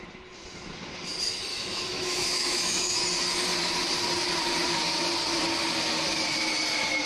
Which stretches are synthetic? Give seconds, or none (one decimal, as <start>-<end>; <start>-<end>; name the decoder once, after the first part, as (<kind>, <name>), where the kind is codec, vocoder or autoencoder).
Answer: 1.5-3.0 (autoencoder, DAC-VAE)